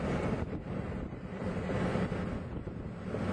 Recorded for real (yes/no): yes